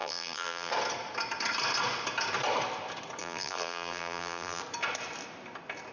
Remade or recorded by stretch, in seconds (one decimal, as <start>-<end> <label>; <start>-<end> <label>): 0.0-0.7 remade; 0.7-3.2 recorded; 3.2-4.6 remade; 4.6-5.9 recorded